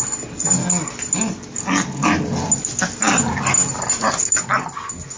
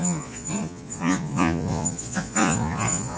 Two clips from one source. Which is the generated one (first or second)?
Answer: second